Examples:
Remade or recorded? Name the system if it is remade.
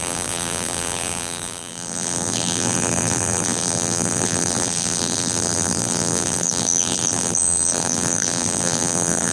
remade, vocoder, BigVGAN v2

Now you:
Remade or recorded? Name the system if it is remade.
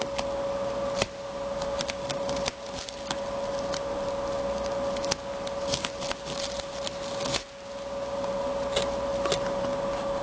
recorded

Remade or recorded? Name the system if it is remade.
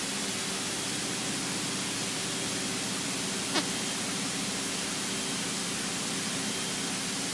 recorded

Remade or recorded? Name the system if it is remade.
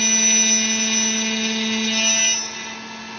recorded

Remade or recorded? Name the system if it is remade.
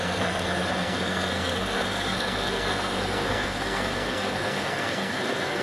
remade, codec, SNAC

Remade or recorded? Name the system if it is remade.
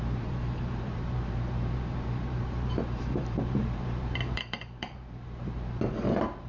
remade, vocoder, BigVGAN v2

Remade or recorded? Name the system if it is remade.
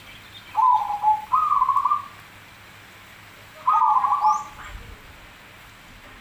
recorded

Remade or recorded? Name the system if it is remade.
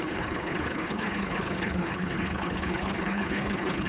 remade, codec, HILCodec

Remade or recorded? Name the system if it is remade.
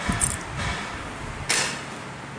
recorded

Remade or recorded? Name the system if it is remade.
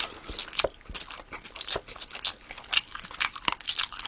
recorded